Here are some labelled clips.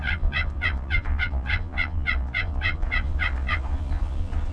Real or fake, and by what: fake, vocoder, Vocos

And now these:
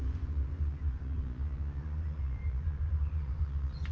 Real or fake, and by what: fake, vocoder, Vocos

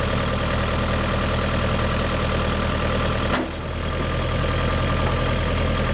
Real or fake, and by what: real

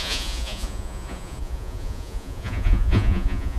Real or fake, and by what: fake, vocoder, Vocos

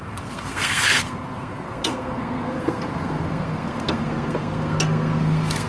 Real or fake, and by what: fake, codec, SNAC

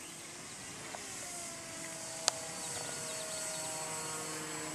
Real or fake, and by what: real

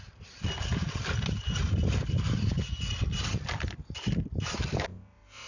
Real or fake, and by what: real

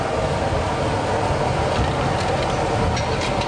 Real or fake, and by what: real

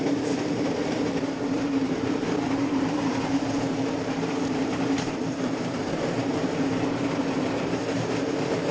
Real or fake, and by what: fake, vocoder, BigVGAN v2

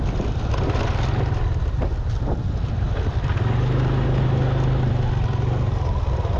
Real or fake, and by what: real